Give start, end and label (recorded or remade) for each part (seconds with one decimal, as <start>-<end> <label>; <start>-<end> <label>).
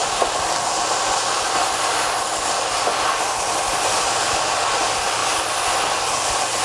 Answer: 0.0-6.6 recorded